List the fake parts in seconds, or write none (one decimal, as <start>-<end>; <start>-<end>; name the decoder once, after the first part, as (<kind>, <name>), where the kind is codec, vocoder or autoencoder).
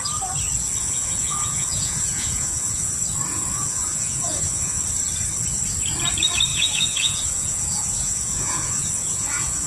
0.8-2.9 (vocoder, Vocos); 3.3-4.8; 6.5-9.7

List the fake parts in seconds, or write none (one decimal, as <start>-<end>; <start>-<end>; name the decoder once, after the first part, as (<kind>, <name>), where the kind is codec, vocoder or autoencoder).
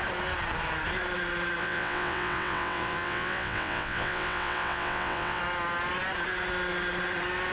1.6-5.4 (vocoder, WaveNeXt)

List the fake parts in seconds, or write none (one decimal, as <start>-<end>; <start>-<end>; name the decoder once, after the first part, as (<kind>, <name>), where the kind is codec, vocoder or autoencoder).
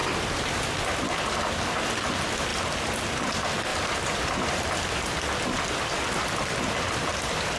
3.7-4.6 (vocoder, BigVGAN v2)